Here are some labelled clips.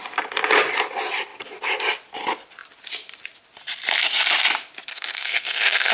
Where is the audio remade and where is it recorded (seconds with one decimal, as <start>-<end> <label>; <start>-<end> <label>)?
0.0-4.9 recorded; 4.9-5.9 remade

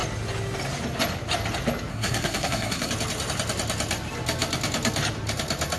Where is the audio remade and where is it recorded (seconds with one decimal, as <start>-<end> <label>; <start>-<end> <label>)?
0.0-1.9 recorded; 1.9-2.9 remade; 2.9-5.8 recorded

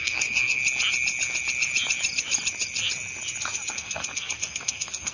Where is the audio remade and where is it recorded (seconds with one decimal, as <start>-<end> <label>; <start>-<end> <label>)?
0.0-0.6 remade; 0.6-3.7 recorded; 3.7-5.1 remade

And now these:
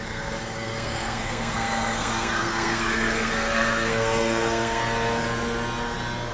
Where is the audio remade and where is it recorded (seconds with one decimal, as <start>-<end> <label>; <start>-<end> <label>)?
0.0-4.8 remade; 4.8-6.3 recorded